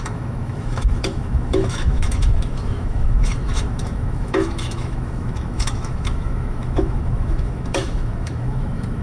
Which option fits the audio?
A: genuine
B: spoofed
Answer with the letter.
B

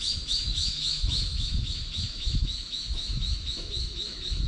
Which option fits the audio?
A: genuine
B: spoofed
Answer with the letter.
B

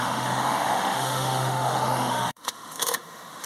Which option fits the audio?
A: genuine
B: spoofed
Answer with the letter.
B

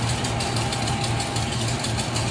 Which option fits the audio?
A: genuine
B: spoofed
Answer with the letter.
A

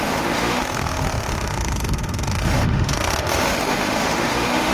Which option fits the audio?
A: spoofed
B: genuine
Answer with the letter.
A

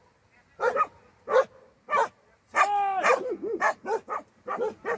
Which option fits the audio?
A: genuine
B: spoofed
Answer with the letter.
A